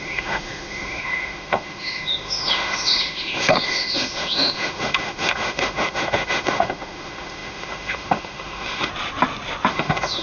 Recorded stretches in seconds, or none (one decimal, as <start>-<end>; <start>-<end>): 8.9-9.7